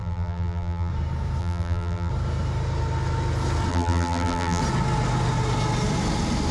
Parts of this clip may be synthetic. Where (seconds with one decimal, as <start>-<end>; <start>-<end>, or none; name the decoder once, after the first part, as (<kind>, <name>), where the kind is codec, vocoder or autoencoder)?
0.0-0.9 (vocoder, BigVGAN v2); 1.4-2.1; 3.7-4.6